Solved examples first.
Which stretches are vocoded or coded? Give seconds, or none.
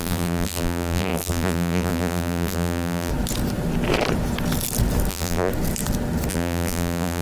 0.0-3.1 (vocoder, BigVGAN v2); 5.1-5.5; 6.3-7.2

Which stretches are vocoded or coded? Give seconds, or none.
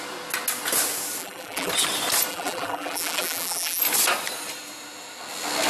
1.2-1.7 (vocoder, BigVGAN v2); 2.3-3.8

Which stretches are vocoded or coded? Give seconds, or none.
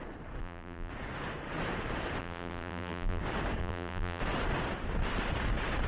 0.4-0.9 (vocoder, BigVGAN v2); 2.2-3.2; 3.6-4.2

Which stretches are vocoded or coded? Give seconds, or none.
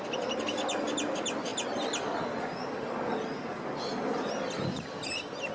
none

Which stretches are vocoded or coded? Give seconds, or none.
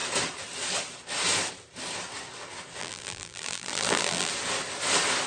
2.8-4.3 (vocoder, BigVGAN v2)